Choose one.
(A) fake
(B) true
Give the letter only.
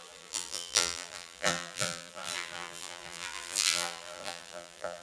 A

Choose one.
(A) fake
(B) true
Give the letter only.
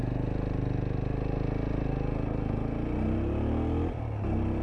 B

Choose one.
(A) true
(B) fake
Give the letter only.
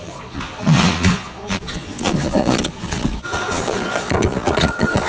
B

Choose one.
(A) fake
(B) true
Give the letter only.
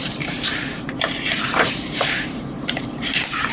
A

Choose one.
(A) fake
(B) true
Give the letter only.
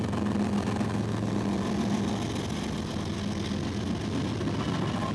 B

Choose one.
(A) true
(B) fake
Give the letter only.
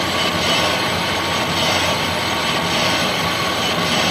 A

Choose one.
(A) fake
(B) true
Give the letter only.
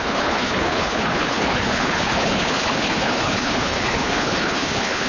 A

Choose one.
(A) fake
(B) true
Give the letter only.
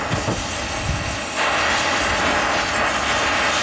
B